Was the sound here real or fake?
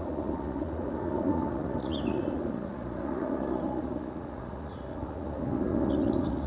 fake